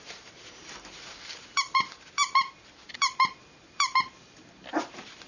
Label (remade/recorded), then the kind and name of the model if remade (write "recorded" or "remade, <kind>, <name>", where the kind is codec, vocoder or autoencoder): remade, vocoder, BigVGAN v2